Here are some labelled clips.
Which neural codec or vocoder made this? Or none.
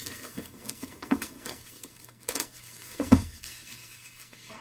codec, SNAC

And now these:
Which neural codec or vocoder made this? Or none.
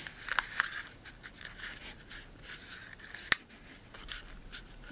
none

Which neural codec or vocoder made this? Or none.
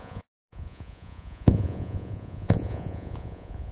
vocoder, Vocos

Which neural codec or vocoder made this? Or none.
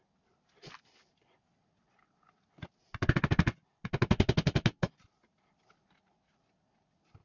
none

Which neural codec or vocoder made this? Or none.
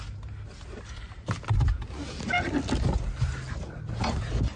none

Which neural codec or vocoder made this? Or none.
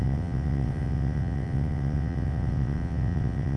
vocoder, WaveNeXt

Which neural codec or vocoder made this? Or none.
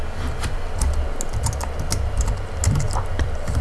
none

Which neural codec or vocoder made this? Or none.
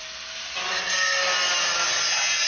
none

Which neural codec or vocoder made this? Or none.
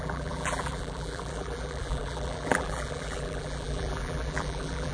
vocoder, BigVGAN v2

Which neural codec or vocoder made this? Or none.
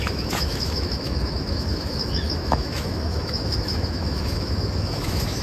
autoencoder, DAC-VAE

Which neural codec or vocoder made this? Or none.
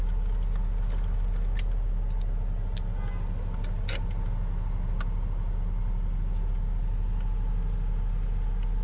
none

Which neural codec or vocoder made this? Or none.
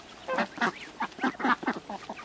none